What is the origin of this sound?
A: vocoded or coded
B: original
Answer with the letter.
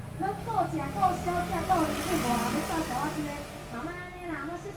B